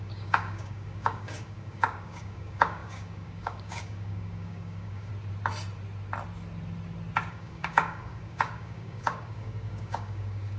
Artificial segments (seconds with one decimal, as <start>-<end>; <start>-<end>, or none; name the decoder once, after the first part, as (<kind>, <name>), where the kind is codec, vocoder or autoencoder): 0.0-5.1 (codec, DAC); 7.3-10.6